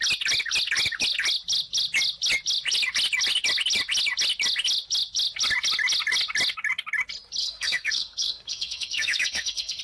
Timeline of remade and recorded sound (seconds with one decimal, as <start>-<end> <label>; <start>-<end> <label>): 0.0-7.4 recorded; 7.4-9.8 remade